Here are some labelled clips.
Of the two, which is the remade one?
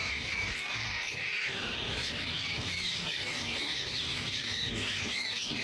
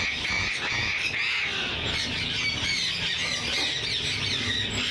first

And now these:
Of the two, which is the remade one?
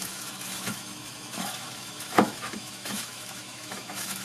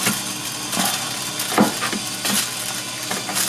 first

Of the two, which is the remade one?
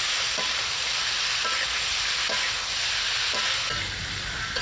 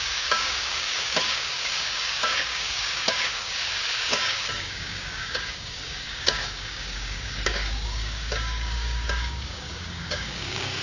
second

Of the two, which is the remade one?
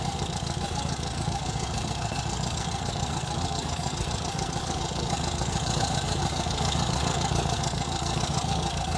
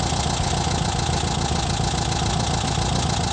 first